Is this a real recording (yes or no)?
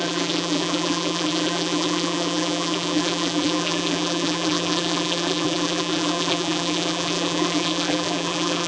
no